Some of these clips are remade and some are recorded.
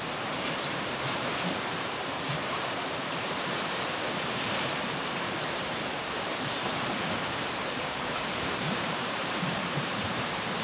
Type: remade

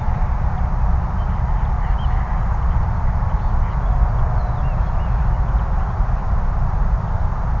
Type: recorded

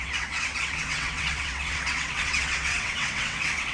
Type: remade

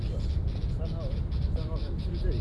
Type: recorded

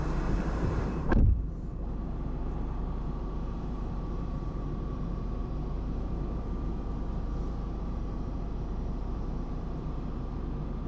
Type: remade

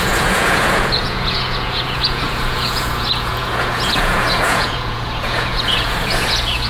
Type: remade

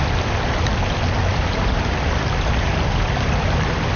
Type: recorded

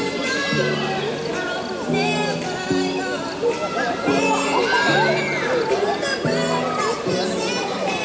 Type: recorded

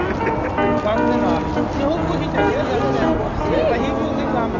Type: recorded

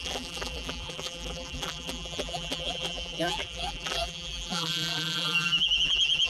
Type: remade